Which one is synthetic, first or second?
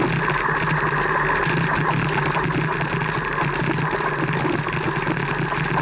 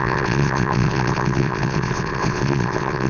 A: second